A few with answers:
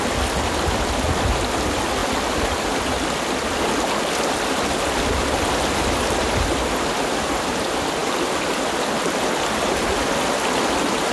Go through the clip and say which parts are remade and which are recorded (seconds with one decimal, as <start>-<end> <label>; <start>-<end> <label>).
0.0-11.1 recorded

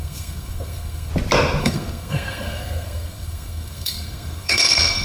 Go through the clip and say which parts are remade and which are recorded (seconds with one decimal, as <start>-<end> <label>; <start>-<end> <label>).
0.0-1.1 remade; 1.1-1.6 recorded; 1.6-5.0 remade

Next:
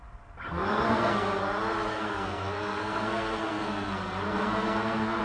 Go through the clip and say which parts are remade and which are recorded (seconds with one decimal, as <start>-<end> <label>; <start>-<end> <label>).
0.0-0.5 recorded; 0.5-1.4 remade; 1.4-1.9 recorded; 1.9-5.2 remade

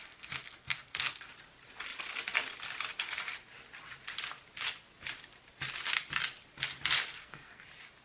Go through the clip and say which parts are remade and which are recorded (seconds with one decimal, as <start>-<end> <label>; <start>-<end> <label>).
0.0-1.3 remade; 1.3-7.1 recorded; 7.1-7.6 remade; 7.6-8.0 recorded